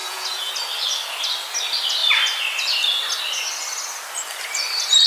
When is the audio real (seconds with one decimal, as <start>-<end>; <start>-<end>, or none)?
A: 0.5-5.1